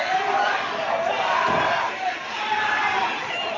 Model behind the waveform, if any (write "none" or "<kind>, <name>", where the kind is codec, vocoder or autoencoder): vocoder, BigVGAN v2